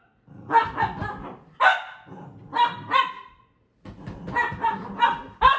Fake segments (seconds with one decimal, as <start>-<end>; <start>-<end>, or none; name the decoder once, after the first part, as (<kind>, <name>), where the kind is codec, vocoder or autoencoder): none